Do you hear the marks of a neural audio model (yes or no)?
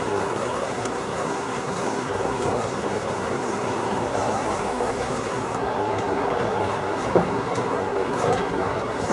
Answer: yes